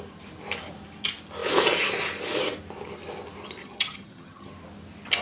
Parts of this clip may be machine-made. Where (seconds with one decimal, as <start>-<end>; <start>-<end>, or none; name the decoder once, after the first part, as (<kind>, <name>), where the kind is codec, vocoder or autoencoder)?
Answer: 3.6-4.5 (vocoder, HiFi-GAN)

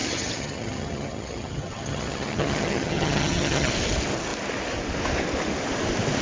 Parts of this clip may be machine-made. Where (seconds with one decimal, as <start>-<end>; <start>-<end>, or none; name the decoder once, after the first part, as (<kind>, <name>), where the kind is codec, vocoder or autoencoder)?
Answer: 0.0-3.7 (vocoder, HiFi-GAN)